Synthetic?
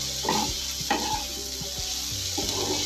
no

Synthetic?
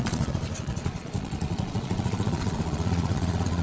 yes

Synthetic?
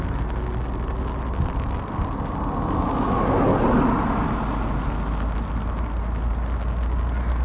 no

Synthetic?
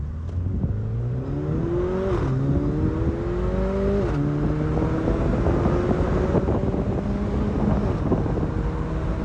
no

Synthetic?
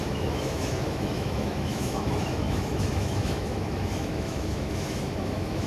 yes